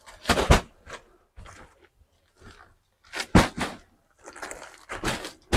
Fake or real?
real